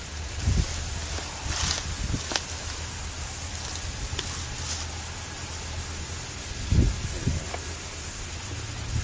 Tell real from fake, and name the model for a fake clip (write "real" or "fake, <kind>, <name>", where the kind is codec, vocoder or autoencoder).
real